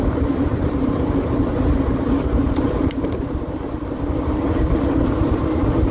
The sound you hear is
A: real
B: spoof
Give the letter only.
B